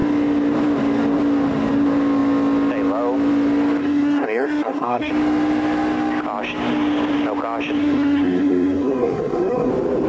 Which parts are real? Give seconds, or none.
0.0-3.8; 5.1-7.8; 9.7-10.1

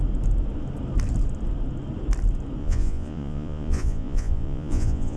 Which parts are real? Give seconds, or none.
0.0-2.6

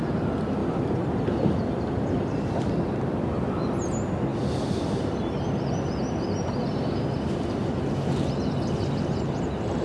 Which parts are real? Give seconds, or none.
0.0-0.6; 2.4-9.8

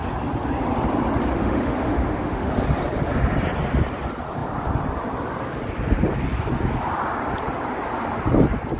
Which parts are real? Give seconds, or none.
0.0-1.4; 2.5-8.8